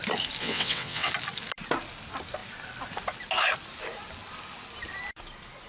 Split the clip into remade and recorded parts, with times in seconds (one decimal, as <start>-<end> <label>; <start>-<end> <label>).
0.0-0.4 recorded; 0.4-1.1 remade; 1.1-5.7 recorded